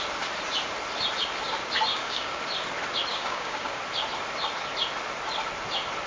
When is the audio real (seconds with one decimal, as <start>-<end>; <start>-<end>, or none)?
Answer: 0.0-1.9; 2.4-3.1; 3.8-6.1